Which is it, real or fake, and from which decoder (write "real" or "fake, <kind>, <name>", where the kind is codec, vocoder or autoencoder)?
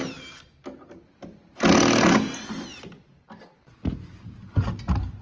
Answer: real